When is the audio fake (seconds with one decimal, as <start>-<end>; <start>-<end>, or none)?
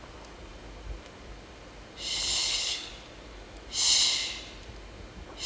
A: 2.4-2.9